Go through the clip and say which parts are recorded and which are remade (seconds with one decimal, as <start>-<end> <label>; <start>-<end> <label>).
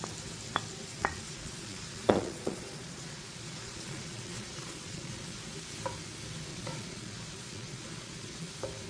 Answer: 0.0-0.9 recorded; 0.9-5.4 remade; 5.4-6.5 recorded; 6.5-8.5 remade; 8.5-8.9 recorded